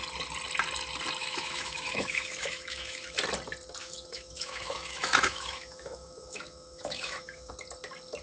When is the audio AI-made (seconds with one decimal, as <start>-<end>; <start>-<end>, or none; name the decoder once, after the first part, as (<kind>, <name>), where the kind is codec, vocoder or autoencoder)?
1.2-3.2 (autoencoder, DAC-VAE); 3.8-7.5